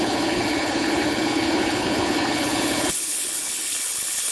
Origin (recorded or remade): remade